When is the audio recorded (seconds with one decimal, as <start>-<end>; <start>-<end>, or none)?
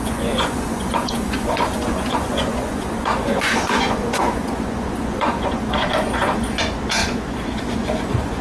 none